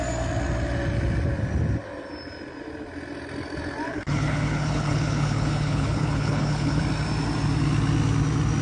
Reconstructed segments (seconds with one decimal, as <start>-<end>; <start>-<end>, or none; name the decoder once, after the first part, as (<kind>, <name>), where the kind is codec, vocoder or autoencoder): 3.9-6.8 (codec, HILCodec)